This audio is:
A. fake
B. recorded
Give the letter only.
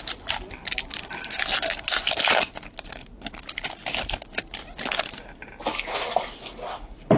B